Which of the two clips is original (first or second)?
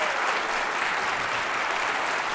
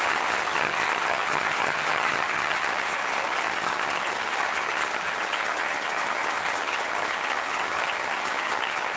first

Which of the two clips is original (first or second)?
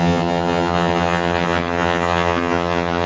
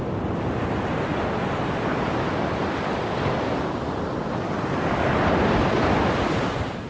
second